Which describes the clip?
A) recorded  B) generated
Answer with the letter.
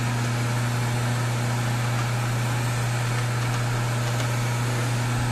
A